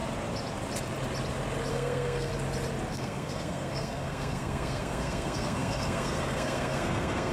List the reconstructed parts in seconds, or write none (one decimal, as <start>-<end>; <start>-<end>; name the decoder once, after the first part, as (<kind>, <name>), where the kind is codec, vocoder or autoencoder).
1.7-2.3 (codec, SNAC); 2.9-7.3